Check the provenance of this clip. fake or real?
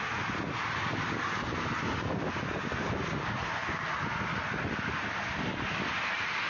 real